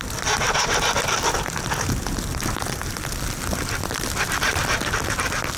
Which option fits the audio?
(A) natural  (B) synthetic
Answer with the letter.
A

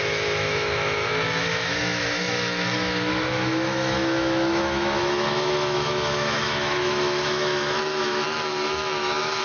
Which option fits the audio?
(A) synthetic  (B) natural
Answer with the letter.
A